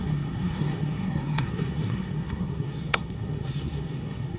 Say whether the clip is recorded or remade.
remade